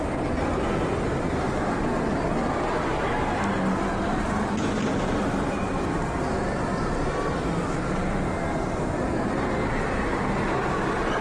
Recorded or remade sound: recorded